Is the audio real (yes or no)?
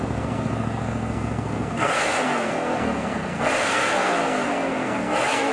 no